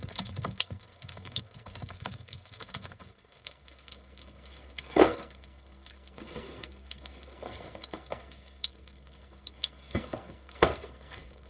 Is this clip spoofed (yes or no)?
yes